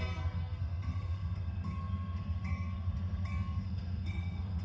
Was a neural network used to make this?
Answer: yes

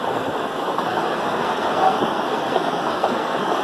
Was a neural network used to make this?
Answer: yes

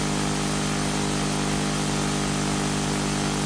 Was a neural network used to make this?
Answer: no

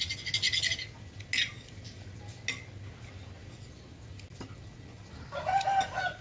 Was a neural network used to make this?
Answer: no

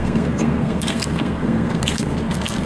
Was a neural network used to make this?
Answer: yes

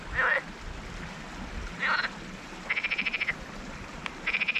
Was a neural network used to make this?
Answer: no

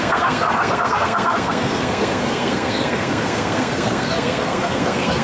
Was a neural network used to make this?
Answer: yes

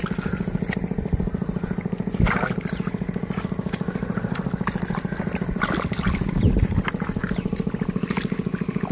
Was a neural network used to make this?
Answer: no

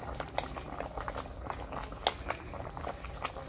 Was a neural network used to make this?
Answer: no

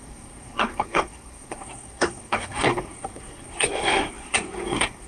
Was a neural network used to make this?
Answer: yes